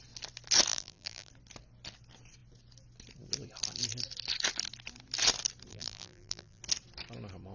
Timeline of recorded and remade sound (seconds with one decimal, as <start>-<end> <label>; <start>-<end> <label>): 0.0-0.7 recorded; 0.7-1.3 remade; 1.3-5.7 recorded; 5.7-6.6 remade; 6.6-7.5 recorded